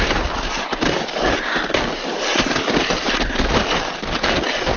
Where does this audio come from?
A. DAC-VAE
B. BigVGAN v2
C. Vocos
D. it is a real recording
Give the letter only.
D